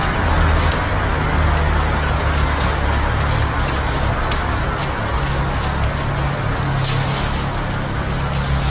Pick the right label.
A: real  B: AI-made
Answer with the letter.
A